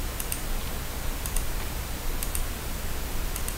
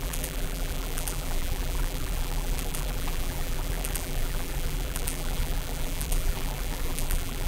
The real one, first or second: first